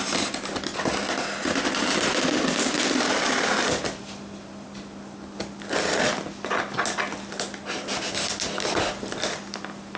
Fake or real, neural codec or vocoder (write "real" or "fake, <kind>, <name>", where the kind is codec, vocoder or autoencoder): real